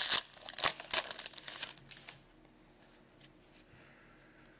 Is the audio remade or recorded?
recorded